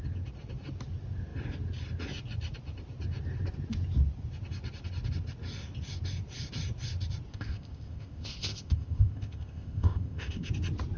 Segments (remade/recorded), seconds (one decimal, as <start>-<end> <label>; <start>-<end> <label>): 0.0-7.3 recorded; 7.3-10.5 remade; 10.5-11.0 recorded